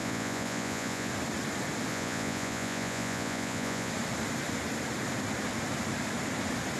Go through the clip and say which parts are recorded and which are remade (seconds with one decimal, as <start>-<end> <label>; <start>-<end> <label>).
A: 0.0-1.1 remade; 1.1-1.9 recorded; 1.9-3.9 remade; 3.9-6.8 recorded